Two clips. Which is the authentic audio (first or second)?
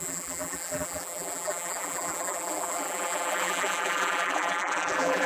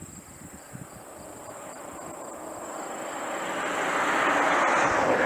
second